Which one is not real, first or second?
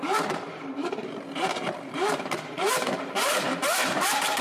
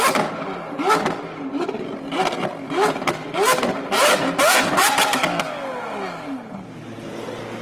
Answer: first